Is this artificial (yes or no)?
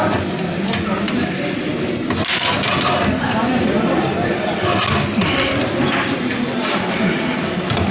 no